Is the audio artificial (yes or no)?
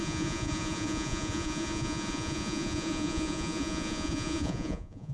yes